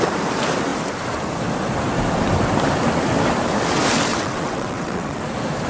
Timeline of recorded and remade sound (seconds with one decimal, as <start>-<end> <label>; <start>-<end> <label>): 0.0-4.1 recorded; 4.1-5.2 remade; 5.2-5.7 recorded